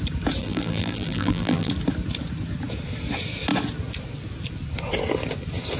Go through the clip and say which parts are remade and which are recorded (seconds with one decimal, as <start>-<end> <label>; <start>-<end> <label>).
0.0-0.4 recorded; 0.4-1.7 remade; 1.7-5.8 recorded